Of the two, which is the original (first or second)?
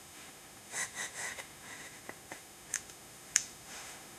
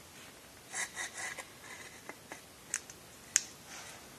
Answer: second